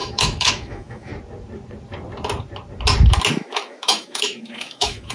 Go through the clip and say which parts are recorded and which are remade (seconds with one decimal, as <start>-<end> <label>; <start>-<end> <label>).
0.0-1.1 remade; 1.1-3.3 recorded; 3.3-5.1 remade